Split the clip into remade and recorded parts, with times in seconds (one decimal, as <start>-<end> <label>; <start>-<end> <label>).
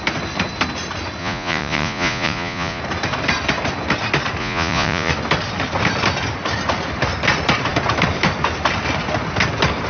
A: 0.0-1.2 recorded; 1.2-2.8 remade; 2.8-4.4 recorded; 4.4-5.1 remade; 5.1-9.9 recorded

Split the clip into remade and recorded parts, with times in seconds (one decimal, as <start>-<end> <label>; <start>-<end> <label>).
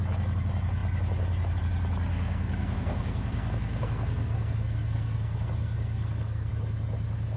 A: 0.0-2.1 recorded; 2.1-6.5 remade; 6.5-7.4 recorded